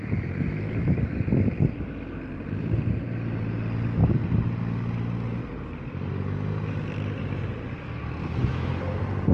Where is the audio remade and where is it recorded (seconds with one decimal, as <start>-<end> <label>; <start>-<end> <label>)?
0.0-8.2 recorded; 8.2-8.7 remade; 8.7-9.3 recorded